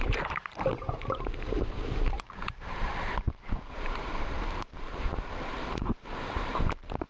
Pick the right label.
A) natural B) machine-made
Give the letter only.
B